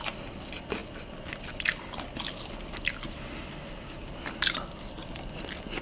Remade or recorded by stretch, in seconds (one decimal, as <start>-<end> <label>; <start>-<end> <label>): 0.0-5.8 recorded